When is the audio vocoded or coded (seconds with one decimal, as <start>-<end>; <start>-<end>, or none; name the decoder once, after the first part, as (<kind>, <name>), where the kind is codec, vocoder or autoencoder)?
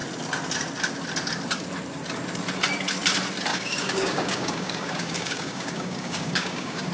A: 3.5-6.9 (codec, DAC)